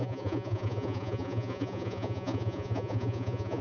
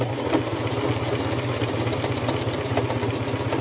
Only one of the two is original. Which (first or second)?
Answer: second